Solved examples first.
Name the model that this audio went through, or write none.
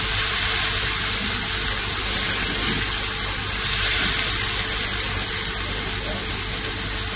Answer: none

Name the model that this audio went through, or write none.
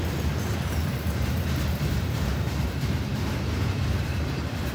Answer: vocoder, BigVGAN v2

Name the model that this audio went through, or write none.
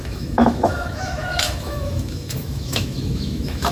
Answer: autoencoder, DAC-VAE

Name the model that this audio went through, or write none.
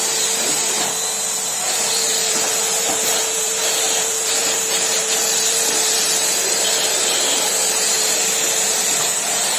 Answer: vocoder, BigVGAN v2